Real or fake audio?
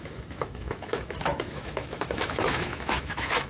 fake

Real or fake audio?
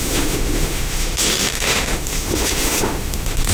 fake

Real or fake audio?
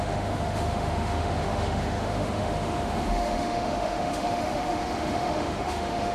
fake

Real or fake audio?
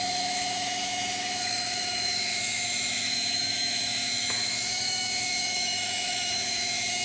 fake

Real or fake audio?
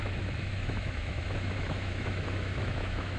fake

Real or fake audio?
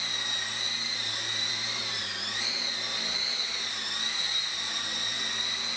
real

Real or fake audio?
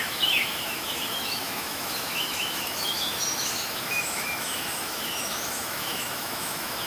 fake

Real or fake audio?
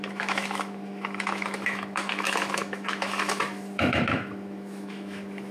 fake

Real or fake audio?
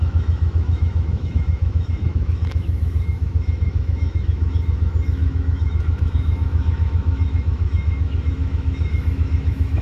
fake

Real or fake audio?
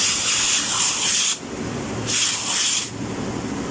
real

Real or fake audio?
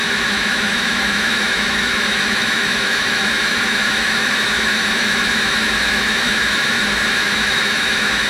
fake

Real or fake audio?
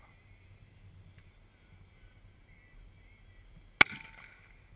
real